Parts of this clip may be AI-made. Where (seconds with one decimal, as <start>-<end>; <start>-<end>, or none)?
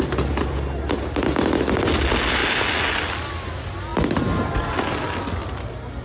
none